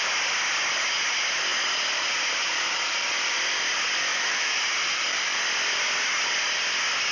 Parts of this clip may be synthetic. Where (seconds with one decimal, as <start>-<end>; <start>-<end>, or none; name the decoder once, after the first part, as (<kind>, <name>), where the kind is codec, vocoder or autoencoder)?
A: 4.1-4.6 (autoencoder, DAC-VAE)